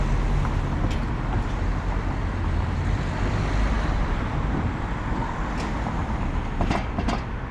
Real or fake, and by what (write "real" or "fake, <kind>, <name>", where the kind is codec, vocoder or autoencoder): real